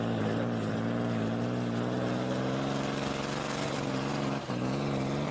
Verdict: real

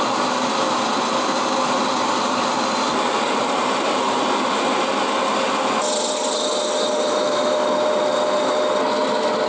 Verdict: real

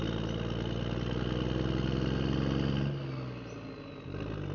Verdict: real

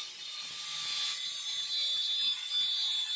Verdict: real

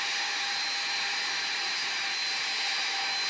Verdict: real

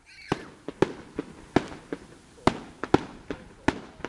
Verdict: real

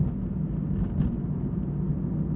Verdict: real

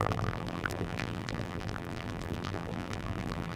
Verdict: fake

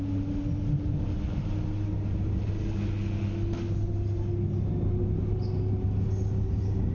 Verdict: real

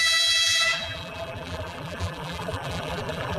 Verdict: fake